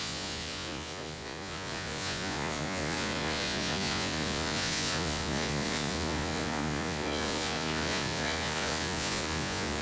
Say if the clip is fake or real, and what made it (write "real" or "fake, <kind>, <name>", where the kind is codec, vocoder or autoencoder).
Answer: fake, vocoder, Vocos